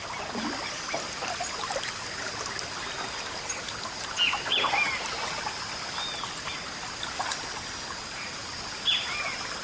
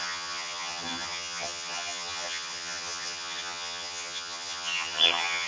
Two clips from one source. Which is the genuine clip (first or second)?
first